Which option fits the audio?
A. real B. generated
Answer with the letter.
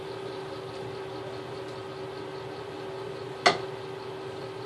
A